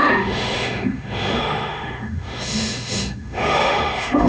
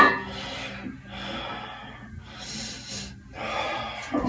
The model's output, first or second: first